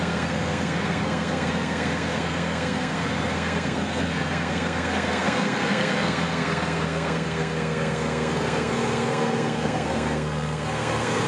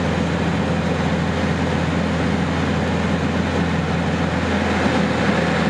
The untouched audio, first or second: second